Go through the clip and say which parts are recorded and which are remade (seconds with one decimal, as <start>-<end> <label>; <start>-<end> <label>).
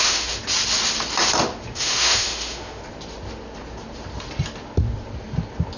0.0-0.4 remade; 0.4-1.7 recorded; 1.7-2.8 remade; 2.8-5.8 recorded